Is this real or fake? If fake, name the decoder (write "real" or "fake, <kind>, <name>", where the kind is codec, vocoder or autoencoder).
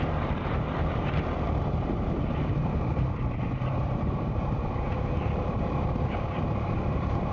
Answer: fake, vocoder, BigVGAN v2